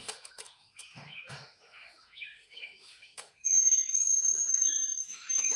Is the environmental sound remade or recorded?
remade